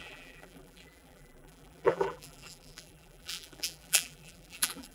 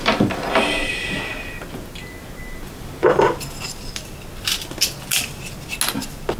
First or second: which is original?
second